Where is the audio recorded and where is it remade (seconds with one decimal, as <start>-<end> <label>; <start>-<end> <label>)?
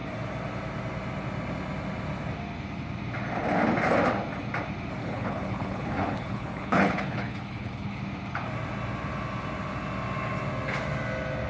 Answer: 0.0-5.0 recorded; 5.0-8.0 remade; 8.0-11.5 recorded